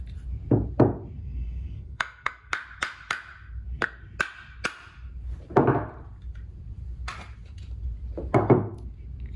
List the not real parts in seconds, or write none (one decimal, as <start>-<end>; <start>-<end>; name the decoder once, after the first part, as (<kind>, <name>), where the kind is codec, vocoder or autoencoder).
1.2-2.5 (codec, SNAC)